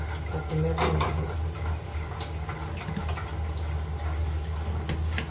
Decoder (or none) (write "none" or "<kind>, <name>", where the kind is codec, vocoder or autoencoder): none